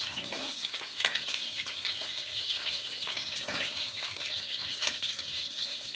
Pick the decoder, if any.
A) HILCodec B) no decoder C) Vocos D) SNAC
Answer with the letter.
D